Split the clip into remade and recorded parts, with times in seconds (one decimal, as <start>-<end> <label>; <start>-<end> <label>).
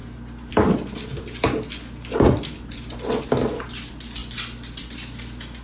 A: 0.0-5.6 recorded